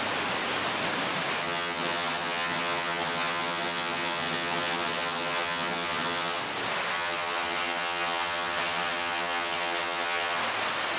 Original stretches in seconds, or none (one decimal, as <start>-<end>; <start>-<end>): 0.0-1.4; 6.4-6.9; 10.4-11.0